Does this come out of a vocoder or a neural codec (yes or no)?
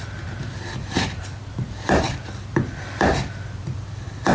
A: yes